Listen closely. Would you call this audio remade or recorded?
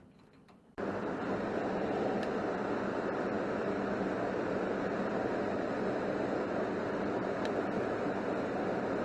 recorded